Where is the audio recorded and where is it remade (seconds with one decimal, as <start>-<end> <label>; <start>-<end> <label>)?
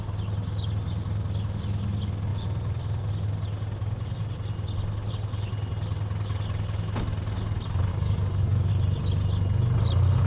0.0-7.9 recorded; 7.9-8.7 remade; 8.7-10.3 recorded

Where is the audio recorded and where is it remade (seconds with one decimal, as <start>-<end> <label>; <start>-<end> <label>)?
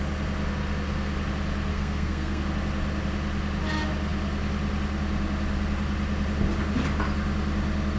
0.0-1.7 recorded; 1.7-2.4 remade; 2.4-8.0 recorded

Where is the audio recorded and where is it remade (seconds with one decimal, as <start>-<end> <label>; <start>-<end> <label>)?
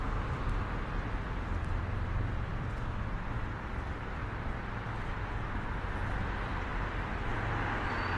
0.0-4.2 remade; 4.2-5.3 recorded; 5.3-6.7 remade; 6.7-8.2 recorded